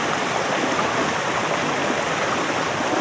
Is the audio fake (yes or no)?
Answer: no